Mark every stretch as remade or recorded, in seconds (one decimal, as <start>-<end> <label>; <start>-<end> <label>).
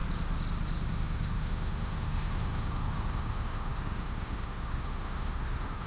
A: 0.0-0.9 recorded; 0.9-5.9 remade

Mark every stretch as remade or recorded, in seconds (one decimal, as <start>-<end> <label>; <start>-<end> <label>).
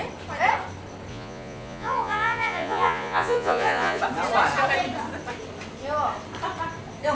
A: 0.0-1.1 recorded; 1.1-4.0 remade; 4.0-7.1 recorded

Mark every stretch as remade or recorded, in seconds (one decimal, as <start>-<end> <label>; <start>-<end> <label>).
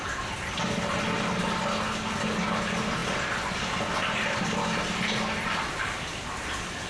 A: 0.0-6.9 recorded